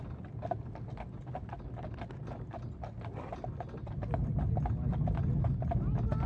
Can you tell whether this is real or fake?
real